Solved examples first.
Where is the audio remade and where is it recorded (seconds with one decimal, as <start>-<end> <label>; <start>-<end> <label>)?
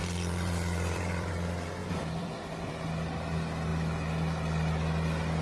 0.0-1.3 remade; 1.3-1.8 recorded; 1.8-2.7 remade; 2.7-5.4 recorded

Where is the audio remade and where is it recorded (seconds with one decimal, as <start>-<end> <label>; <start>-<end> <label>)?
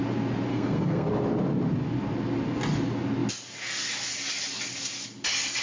0.0-0.5 recorded; 0.5-1.1 remade; 1.1-5.6 recorded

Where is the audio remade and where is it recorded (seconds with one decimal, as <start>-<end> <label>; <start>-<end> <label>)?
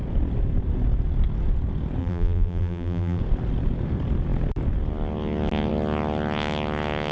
0.0-2.0 recorded; 2.0-3.2 remade; 3.2-7.1 recorded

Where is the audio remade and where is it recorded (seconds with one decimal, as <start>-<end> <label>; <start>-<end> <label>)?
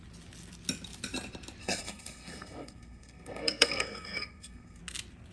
0.0-1.6 recorded; 1.6-4.8 remade; 4.8-5.3 recorded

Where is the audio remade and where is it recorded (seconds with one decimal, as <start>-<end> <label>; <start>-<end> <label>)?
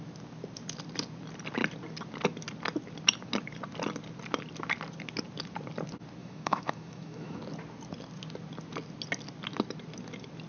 0.0-6.2 recorded; 6.2-7.4 remade; 7.4-10.5 recorded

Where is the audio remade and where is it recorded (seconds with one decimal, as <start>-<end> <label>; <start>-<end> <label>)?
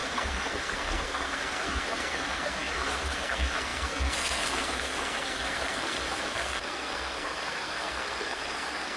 0.0-9.0 remade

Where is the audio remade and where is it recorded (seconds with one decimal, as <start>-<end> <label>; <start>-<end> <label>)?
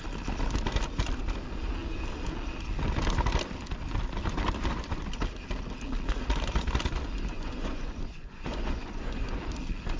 0.0-7.3 recorded; 7.3-9.4 remade; 9.4-10.0 recorded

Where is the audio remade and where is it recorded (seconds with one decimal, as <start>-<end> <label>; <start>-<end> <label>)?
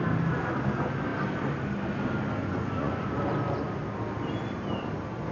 0.0-2.4 recorded; 2.4-3.2 remade; 3.2-5.3 recorded